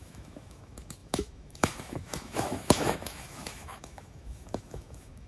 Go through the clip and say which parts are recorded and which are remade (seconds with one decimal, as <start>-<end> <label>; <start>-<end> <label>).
0.0-5.3 remade